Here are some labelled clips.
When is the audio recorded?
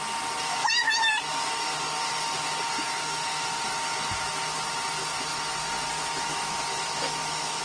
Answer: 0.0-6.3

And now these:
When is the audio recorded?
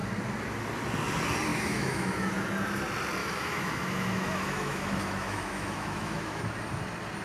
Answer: 0.0-1.5; 2.3-3.2; 6.4-7.2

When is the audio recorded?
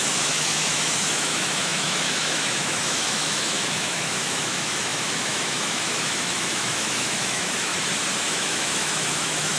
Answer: 7.7-8.2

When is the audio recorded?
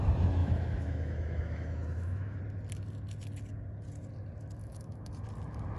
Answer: 0.0-0.4; 2.4-4.6; 5.1-5.8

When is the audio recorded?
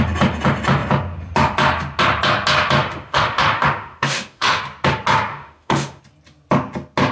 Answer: 0.0-2.8; 4.6-5.3; 6.0-7.1